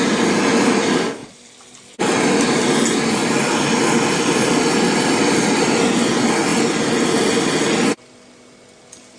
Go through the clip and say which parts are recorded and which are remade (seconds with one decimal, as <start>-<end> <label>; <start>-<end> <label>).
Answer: 0.0-1.2 recorded; 1.2-4.4 remade; 4.4-9.2 recorded